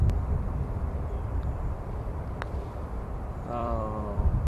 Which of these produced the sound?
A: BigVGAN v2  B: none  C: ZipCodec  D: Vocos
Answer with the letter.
A